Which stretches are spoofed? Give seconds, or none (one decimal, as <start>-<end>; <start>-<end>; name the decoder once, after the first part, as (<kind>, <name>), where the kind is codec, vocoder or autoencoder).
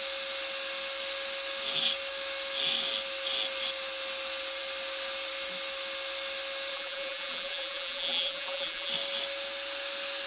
6.7-8.9 (vocoder, BigVGAN v2)